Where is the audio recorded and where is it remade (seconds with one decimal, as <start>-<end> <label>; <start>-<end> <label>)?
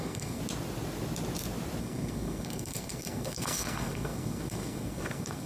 0.0-0.4 remade; 0.4-1.8 recorded; 1.8-5.5 remade